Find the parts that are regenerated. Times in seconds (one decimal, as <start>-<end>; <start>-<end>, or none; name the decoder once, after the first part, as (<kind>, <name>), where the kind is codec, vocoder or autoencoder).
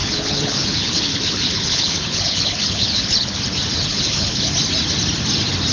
0.0-3.4 (codec, HILCodec); 3.9-4.5